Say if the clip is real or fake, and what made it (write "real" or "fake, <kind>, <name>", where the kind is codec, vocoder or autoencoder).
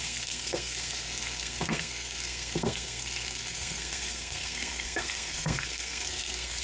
fake, codec, SNAC